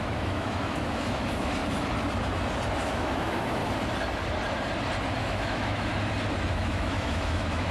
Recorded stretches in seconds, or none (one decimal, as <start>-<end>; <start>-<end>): 1.6-2.8; 3.6-5.2; 5.9-6.5